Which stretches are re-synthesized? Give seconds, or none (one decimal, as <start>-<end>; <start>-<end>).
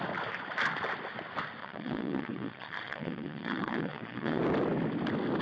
1.6-4.4